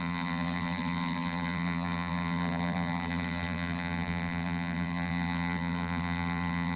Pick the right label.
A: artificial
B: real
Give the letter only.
A